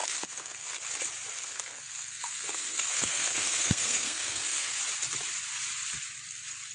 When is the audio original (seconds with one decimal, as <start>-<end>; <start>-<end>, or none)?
0.8-1.3; 4.8-6.7